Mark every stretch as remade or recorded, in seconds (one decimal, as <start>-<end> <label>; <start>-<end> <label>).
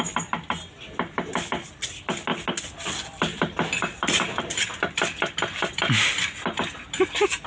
0.0-7.5 recorded